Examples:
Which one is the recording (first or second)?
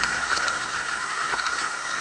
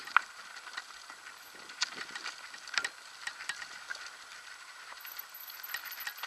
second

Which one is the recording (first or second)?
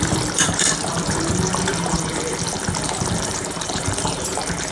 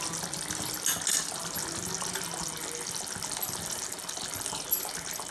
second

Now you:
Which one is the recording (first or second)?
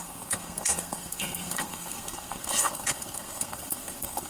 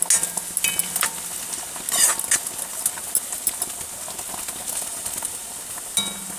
second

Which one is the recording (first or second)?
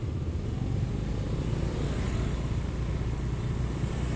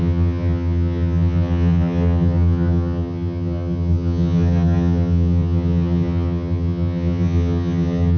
first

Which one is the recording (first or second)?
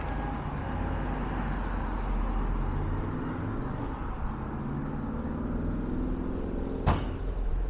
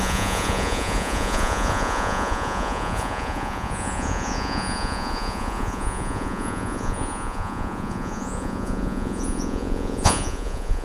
first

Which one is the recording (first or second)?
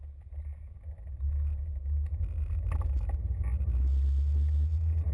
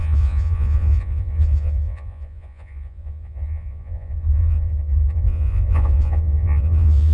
first